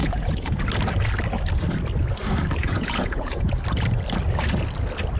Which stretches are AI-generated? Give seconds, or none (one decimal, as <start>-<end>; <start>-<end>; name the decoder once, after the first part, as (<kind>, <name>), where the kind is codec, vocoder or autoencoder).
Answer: 0.0-0.6 (vocoder, Vocos); 2.6-3.5